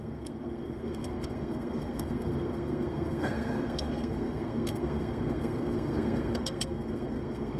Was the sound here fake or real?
fake